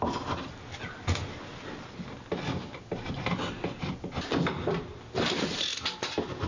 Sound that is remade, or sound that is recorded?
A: recorded